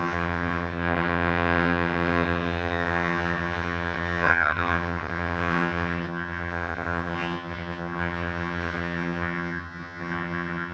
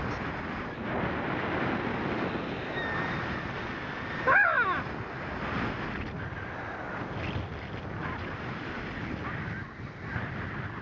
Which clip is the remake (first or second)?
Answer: first